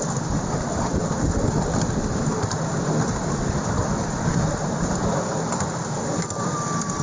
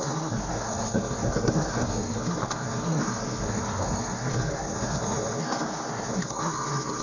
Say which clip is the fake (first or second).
second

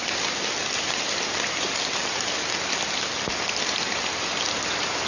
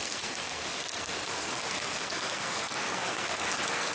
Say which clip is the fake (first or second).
second